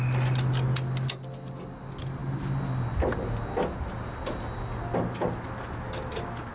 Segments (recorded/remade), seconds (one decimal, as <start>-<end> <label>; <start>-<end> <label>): 0.0-6.5 recorded